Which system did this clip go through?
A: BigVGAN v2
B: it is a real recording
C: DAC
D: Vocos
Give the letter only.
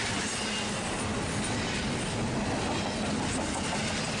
B